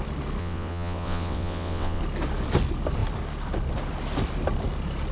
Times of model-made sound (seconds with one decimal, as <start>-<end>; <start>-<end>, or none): 0.4-2.0